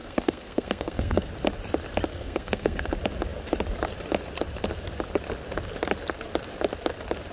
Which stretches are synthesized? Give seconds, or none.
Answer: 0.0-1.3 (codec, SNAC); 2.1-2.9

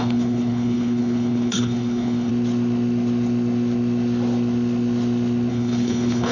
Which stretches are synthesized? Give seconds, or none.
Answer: 0.0-2.3 (codec, HILCodec); 5.5-6.3

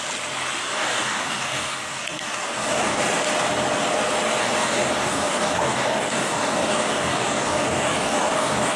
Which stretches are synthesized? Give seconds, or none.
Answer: 0.6-3.0 (codec, DAC); 4.4-8.8

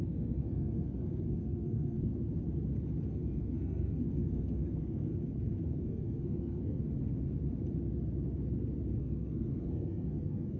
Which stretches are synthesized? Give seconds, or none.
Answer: 0.0-2.1 (codec, SNAC); 3.1-5.1; 5.7-6.8; 9.0-10.6